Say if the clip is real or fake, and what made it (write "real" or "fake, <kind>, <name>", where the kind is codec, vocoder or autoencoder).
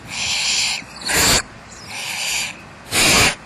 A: real